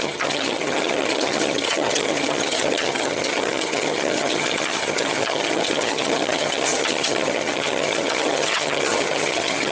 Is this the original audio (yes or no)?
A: no